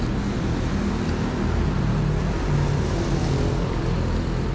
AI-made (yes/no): no